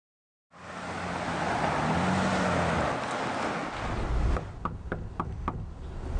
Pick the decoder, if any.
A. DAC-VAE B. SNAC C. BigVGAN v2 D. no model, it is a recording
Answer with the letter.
D